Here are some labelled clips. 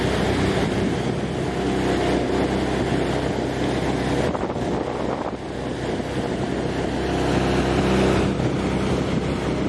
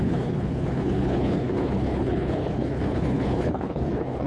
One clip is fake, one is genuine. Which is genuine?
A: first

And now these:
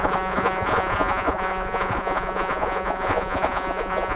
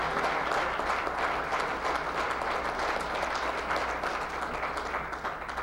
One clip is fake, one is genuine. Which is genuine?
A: second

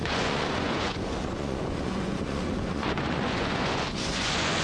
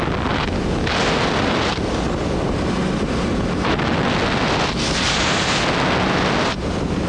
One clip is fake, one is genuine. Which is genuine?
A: second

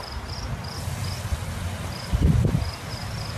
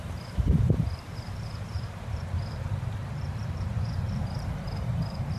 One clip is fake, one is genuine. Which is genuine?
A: first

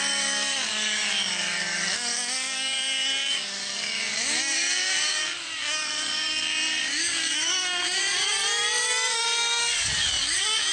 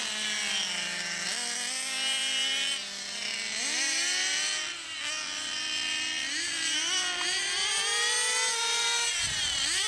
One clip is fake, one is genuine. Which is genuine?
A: second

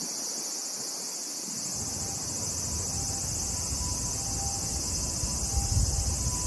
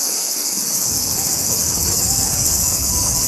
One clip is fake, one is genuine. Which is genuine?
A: first